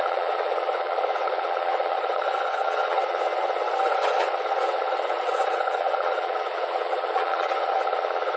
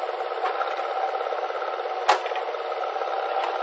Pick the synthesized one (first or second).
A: first